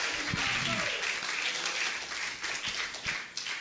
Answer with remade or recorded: recorded